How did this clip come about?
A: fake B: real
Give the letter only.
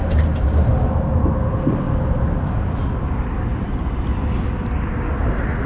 B